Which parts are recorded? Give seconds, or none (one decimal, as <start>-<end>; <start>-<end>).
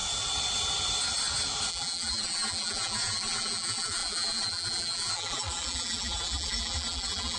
0.0-1.7